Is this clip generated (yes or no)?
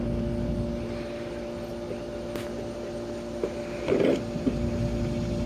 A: no